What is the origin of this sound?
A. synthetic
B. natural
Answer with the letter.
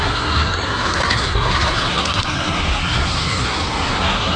A